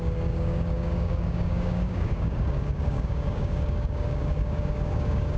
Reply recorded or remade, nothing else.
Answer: remade